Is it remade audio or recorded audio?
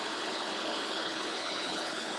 remade